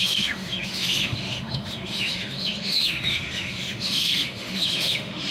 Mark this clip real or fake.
fake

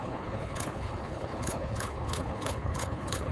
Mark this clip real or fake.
fake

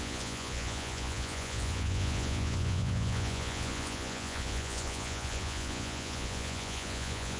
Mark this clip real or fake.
fake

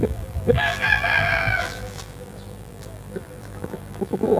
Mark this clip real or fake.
fake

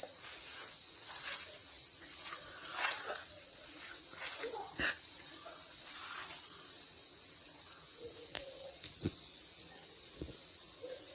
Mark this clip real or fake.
fake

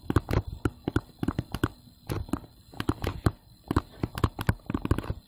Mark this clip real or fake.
real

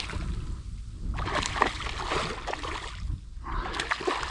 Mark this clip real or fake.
real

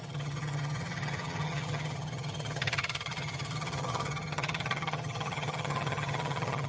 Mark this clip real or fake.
fake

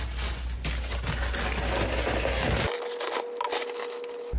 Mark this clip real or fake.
real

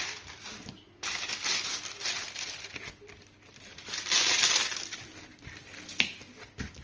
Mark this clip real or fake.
real